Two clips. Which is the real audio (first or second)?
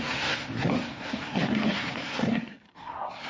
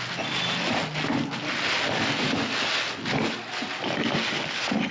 second